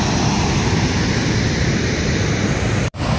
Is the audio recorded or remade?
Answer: recorded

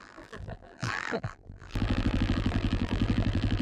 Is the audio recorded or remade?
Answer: remade